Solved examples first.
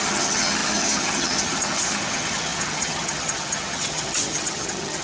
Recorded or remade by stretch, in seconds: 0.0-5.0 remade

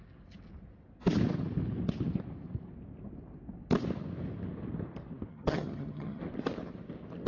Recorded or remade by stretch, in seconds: 0.0-5.3 recorded; 5.3-6.2 remade; 6.2-7.3 recorded